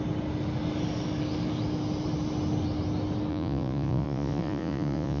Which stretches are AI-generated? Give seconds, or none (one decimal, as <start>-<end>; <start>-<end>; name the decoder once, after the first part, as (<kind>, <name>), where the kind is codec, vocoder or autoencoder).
3.3-5.2 (vocoder, Vocos)